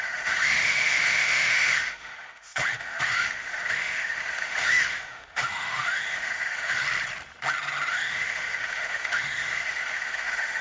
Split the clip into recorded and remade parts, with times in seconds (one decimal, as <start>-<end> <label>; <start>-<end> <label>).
0.0-6.8 remade; 6.8-7.9 recorded; 7.9-10.6 remade